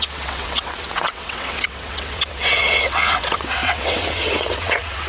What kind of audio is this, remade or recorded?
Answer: remade